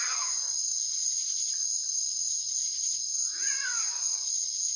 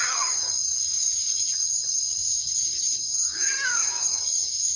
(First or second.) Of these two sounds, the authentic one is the first